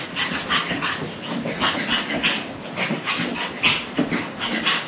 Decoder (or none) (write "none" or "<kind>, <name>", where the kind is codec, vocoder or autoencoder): none